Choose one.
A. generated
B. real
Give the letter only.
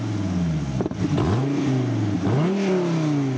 B